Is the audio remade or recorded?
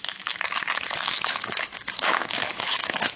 remade